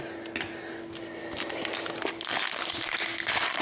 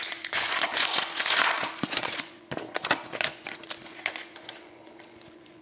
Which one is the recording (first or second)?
first